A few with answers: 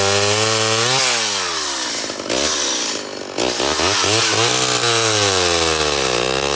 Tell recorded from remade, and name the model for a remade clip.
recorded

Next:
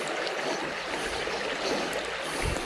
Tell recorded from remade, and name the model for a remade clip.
recorded